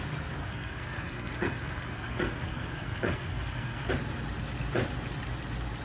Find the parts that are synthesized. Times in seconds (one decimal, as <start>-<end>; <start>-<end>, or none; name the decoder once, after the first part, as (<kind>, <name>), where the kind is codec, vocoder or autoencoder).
0.4-3.9 (codec, SNAC)